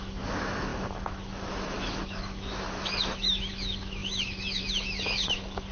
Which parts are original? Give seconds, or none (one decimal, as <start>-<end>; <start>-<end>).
none

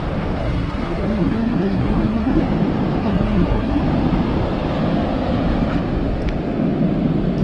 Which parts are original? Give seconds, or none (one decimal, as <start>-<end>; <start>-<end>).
0.0-0.4; 2.4-3.0; 3.8-7.4

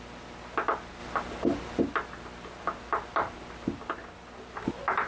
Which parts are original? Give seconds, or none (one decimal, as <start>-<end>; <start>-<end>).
0.0-5.1

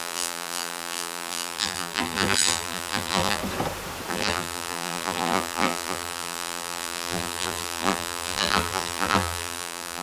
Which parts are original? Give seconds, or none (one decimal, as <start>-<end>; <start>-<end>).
3.4-4.1

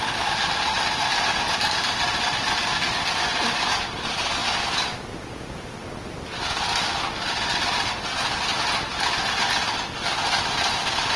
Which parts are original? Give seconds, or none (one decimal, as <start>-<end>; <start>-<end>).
0.0-11.2